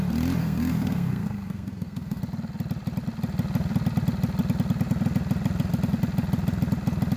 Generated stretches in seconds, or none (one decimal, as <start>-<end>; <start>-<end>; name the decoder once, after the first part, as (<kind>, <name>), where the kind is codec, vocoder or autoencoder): 0.4-2.2 (codec, SNAC)